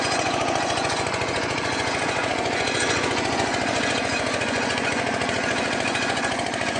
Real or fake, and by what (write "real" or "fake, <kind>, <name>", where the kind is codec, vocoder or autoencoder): fake, vocoder, Vocos